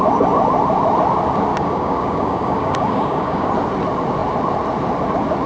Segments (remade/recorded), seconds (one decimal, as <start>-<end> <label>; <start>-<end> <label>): 0.0-1.5 recorded; 1.5-3.5 remade; 3.5-5.5 recorded